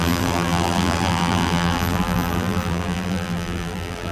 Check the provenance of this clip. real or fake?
fake